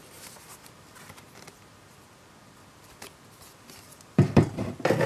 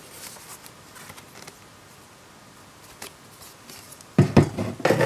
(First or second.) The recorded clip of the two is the second